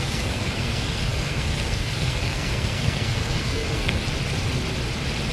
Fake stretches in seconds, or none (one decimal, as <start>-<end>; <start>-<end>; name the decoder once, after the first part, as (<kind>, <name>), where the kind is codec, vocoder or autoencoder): 0.0-4.0 (codec, SNAC)